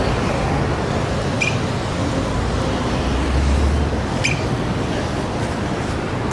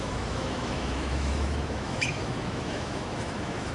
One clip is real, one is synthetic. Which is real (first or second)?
first